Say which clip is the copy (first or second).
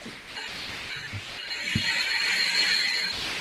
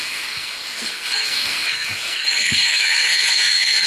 second